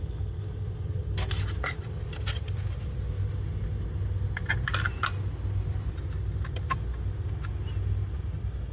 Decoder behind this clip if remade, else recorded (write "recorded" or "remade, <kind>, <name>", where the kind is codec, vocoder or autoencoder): recorded